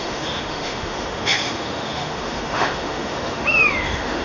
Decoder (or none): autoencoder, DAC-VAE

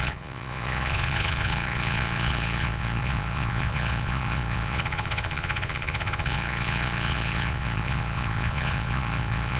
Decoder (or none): vocoder, Vocos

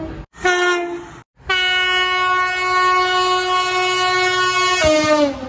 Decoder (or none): none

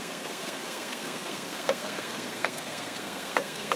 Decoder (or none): codec, SNAC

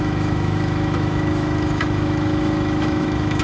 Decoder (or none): autoencoder, DAC-VAE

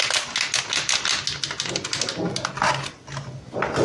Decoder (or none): none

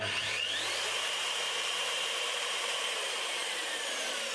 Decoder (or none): vocoder, BigVGAN v2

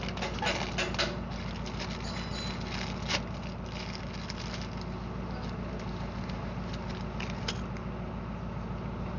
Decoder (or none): none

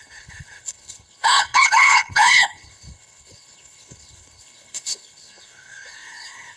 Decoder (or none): codec, HILCodec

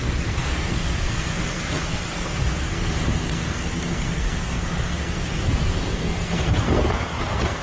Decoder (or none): codec, SNAC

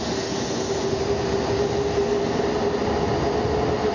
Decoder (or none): none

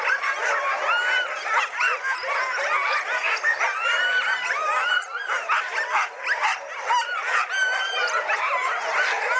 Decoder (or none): none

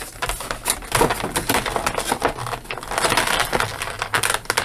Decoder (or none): none